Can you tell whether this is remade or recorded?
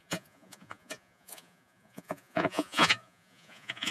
remade